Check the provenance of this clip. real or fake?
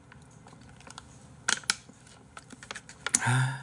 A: real